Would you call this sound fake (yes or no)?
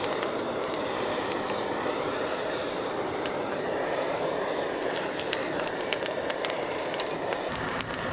yes